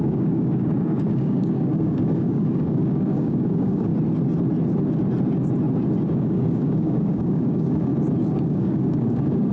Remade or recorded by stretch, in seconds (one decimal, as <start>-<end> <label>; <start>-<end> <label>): 0.0-3.9 remade; 3.9-6.1 recorded; 6.1-7.9 remade; 7.9-8.4 recorded; 8.4-9.5 remade